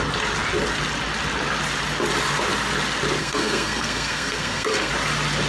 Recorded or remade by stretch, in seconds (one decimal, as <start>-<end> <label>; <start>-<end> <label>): 0.0-3.2 recorded; 3.2-4.9 remade; 4.9-5.5 recorded